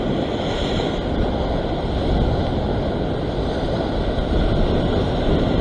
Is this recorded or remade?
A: recorded